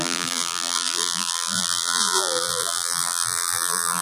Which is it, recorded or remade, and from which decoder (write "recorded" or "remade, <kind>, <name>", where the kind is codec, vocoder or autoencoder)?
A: remade, vocoder, BigVGAN v2